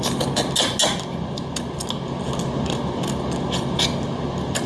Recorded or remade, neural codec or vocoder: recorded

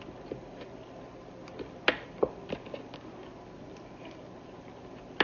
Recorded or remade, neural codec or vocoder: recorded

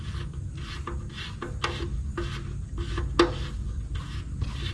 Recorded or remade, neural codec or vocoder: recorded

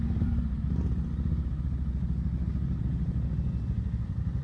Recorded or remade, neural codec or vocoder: recorded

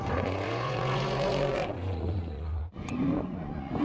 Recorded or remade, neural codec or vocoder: remade, vocoder, Vocos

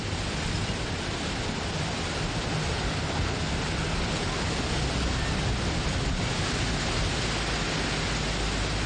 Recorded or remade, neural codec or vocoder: recorded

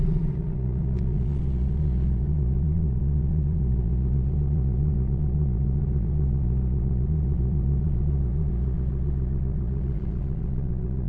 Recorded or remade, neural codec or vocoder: remade, vocoder, Vocos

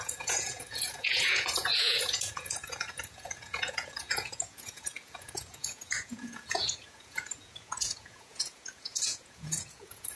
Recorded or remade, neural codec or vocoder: remade, vocoder, Vocos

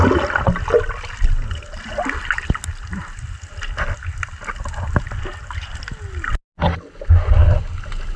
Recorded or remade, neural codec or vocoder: recorded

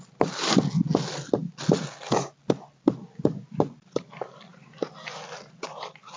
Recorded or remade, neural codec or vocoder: recorded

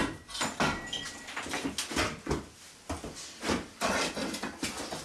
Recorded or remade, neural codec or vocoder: recorded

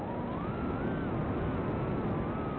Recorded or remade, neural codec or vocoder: recorded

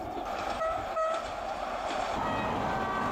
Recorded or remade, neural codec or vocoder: recorded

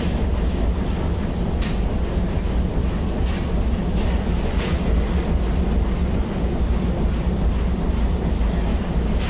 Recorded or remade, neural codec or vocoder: recorded